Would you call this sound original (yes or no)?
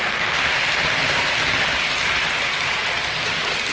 yes